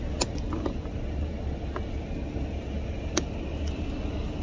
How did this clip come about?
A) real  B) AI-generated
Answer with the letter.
A